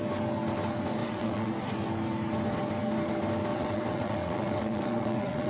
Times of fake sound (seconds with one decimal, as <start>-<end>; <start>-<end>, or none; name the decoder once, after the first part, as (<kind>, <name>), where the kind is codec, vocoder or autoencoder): 1.0-1.5 (vocoder, WaveNeXt); 3.5-5.5